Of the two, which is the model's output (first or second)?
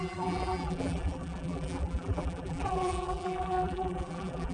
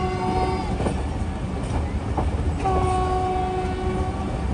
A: first